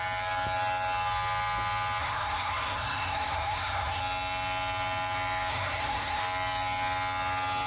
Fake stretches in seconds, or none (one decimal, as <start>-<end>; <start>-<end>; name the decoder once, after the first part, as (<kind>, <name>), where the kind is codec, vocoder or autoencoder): 2.0-4.0 (codec, SNAC); 5.5-6.2